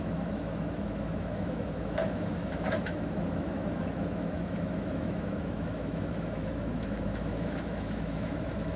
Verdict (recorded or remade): remade